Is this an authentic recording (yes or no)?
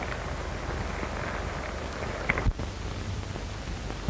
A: yes